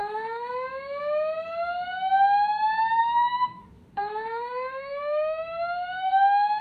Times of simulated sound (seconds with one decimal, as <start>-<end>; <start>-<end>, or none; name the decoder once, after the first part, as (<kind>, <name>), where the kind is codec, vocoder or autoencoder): 0.0-0.5 (autoencoder, DAC-VAE); 3.0-6.6

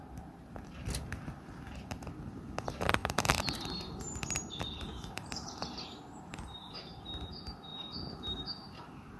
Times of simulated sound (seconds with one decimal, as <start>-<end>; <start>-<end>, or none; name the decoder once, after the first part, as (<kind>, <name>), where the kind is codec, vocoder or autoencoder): 3.0-6.0 (vocoder, BigVGAN v2); 7.7-8.4

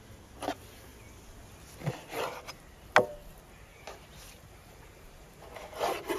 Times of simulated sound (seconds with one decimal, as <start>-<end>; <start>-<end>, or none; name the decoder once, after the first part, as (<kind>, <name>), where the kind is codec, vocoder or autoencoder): 3.7-5.5 (vocoder, BigVGAN v2)

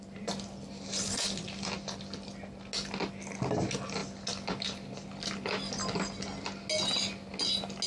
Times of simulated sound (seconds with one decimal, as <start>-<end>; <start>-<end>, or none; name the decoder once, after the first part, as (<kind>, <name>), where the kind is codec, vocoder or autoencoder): none